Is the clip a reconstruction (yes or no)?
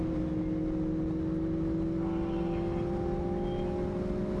no